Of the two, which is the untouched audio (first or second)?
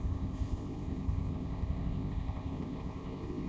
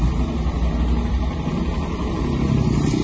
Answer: second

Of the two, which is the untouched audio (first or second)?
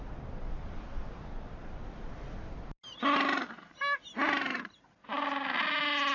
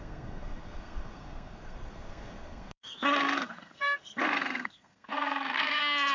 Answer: first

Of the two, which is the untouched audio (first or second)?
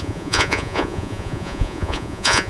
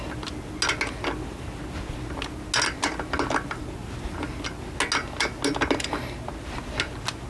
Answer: second